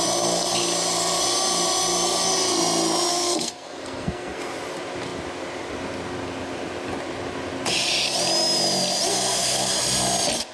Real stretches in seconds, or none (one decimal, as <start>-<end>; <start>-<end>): 0.0-3.1; 4.5-9.1; 9.8-10.5